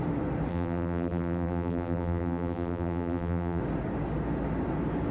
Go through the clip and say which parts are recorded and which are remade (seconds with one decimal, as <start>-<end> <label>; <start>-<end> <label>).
0.0-0.5 recorded; 0.5-3.6 remade; 3.6-5.1 recorded